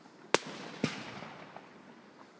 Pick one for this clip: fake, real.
real